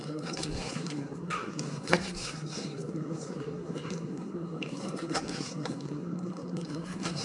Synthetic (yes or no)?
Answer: yes